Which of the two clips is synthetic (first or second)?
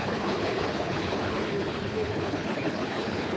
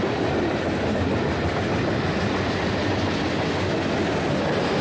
first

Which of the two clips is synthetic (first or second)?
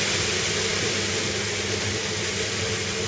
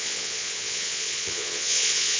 second